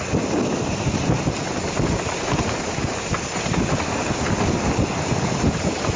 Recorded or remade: recorded